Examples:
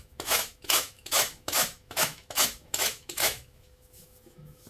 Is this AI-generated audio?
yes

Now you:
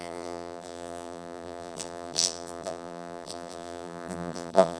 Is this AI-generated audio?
yes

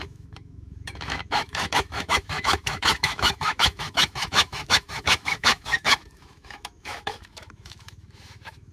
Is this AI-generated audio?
yes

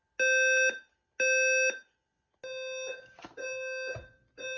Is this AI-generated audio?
no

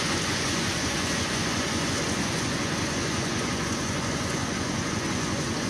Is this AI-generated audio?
yes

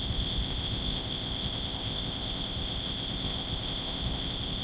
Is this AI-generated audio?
yes